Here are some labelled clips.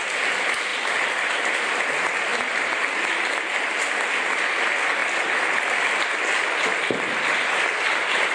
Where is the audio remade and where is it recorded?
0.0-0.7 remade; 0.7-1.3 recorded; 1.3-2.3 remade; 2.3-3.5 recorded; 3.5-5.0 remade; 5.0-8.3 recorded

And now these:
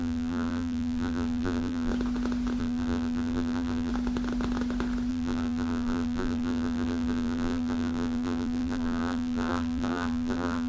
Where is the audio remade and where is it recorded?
0.0-1.9 remade; 1.9-2.6 recorded; 2.6-3.9 remade; 3.9-5.1 recorded; 5.1-10.7 remade

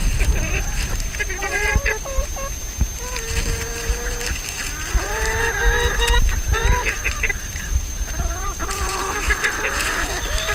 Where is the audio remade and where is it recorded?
0.0-2.3 remade; 2.3-6.6 recorded; 6.6-10.1 remade; 10.1-10.5 recorded